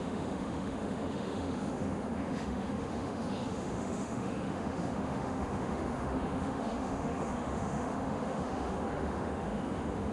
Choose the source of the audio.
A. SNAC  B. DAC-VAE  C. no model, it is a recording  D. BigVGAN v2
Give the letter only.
B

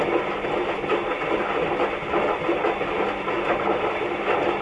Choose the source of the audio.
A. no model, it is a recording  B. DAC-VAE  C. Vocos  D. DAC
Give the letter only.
A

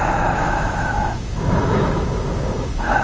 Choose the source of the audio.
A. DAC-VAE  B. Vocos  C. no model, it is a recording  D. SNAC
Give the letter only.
A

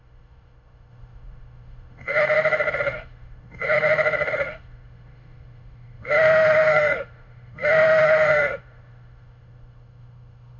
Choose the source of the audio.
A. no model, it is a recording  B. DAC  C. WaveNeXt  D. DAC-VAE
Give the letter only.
D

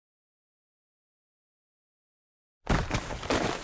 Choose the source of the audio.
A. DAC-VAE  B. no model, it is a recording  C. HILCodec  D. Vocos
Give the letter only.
B